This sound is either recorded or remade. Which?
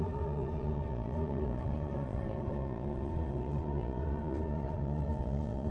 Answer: remade